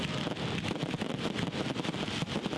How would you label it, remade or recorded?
recorded